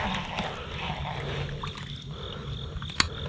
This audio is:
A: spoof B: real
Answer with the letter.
B